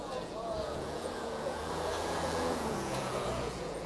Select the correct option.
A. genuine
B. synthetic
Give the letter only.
B